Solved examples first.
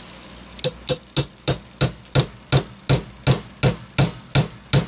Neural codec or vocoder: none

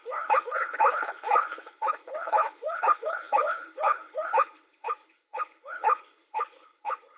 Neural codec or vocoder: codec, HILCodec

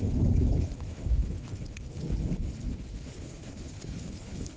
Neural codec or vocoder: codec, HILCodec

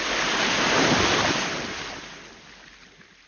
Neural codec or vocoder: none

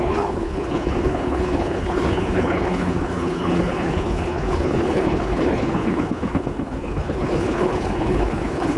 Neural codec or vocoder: codec, HILCodec